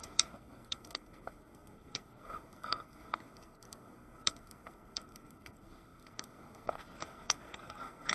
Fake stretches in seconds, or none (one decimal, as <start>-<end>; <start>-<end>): 0.0-8.1